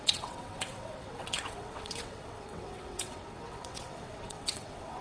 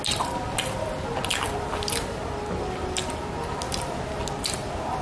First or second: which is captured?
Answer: second